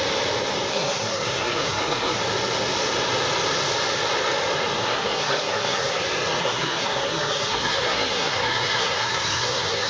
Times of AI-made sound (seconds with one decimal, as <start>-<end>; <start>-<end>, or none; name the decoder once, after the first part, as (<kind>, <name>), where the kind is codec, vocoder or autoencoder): 0.7-2.2 (codec, SNAC); 4.8-6.0; 6.4-9.9